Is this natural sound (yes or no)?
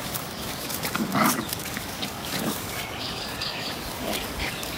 no